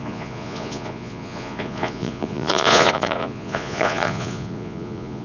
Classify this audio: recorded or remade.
remade